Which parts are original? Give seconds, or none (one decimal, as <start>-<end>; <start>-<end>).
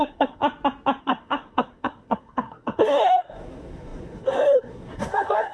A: 0.4-1.0